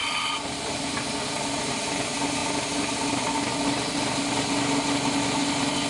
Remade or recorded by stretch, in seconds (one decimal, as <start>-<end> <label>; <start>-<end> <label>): 0.0-5.9 recorded